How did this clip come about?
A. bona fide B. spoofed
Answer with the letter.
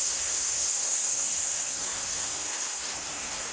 B